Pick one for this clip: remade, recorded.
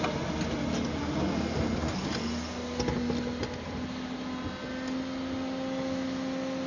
recorded